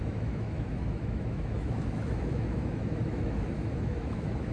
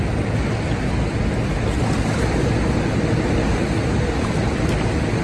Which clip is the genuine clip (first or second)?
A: second